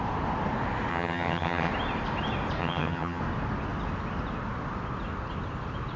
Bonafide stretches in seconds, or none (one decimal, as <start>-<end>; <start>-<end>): 0.0-0.9; 1.7-2.6; 3.2-6.0